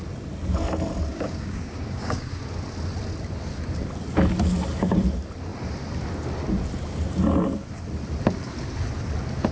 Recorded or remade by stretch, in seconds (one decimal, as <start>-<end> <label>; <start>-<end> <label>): 0.0-1.1 recorded; 1.1-2.4 remade; 2.4-9.5 recorded